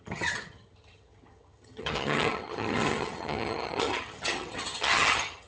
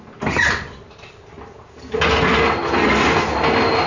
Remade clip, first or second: first